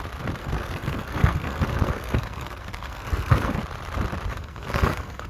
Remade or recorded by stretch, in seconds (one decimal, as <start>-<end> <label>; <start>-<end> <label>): 0.0-0.4 recorded; 0.4-3.6 remade; 3.6-4.3 recorded; 4.3-5.3 remade

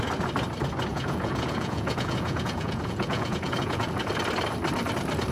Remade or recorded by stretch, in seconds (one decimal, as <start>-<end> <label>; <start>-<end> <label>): 0.0-0.9 recorded; 0.9-4.1 remade; 4.1-5.3 recorded

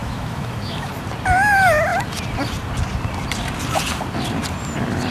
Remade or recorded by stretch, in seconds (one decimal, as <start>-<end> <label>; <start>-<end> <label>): 0.0-0.9 remade; 0.9-5.1 recorded

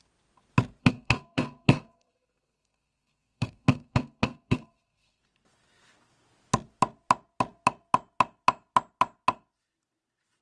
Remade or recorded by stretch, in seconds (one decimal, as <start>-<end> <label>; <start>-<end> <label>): 0.0-0.8 recorded; 0.8-5.2 remade; 5.2-10.4 recorded